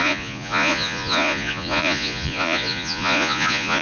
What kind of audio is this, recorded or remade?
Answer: remade